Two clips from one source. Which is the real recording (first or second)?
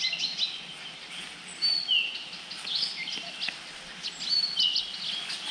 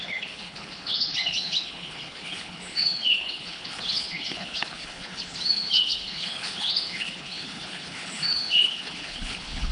first